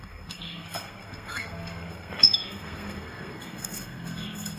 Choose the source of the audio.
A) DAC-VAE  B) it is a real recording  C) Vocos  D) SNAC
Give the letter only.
D